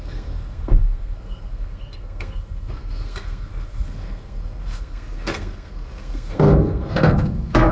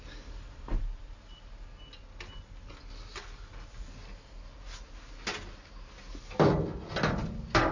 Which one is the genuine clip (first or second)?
second